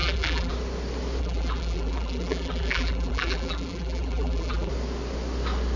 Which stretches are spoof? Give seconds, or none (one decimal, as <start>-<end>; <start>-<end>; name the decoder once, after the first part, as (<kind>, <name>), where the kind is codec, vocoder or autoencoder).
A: 0.0-0.5 (vocoder, BigVGAN v2); 1.2-4.7